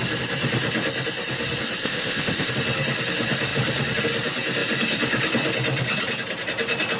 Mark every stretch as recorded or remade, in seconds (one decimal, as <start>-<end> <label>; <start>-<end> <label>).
0.0-1.8 recorded; 1.8-2.5 remade; 2.5-7.0 recorded